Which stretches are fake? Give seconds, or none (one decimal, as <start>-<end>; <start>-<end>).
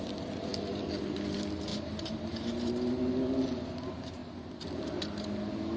1.7-2.7; 4.2-4.9